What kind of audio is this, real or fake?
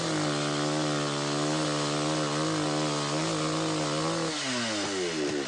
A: real